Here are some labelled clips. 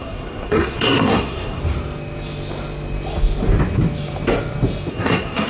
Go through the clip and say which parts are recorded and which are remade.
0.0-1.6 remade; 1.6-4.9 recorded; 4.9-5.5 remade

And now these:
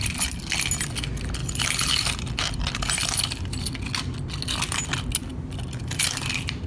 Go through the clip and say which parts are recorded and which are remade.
0.0-1.4 recorded; 1.4-3.7 remade; 3.7-5.3 recorded; 5.3-5.8 remade; 5.8-6.7 recorded

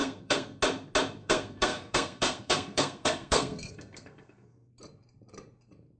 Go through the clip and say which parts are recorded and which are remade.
0.0-0.6 remade; 0.6-1.2 recorded; 1.2-4.7 remade; 4.7-6.0 recorded

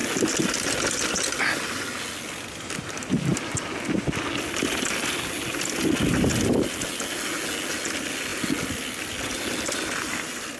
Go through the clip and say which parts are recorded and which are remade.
0.0-10.6 recorded

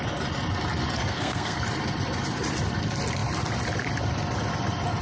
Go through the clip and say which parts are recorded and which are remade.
0.0-1.0 recorded; 1.0-1.6 remade; 1.6-5.0 recorded

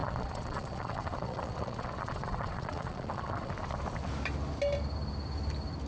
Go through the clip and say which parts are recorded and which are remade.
0.0-3.5 remade; 3.5-5.9 recorded

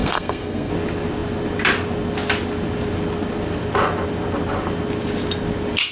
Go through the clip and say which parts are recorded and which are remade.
0.0-0.7 remade; 0.7-5.9 recorded

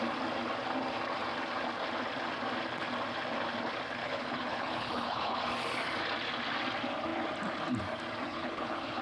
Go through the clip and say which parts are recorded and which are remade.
0.0-4.0 recorded; 4.0-5.4 remade; 5.4-8.3 recorded; 8.3-9.0 remade